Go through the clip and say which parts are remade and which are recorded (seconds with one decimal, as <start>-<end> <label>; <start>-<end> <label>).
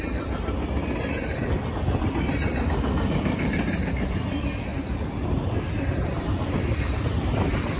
0.0-0.7 remade; 0.7-1.3 recorded; 1.3-7.8 remade